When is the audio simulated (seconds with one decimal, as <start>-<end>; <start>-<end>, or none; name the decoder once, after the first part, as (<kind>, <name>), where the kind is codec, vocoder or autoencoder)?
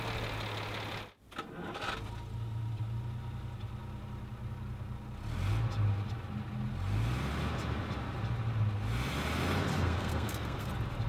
9.7-10.7 (codec, SNAC)